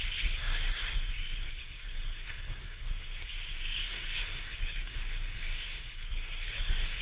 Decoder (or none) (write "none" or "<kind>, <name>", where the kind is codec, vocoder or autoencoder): codec, SNAC